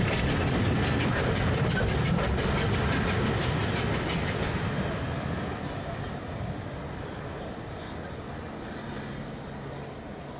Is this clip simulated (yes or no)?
no